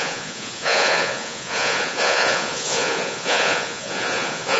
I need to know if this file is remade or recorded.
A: remade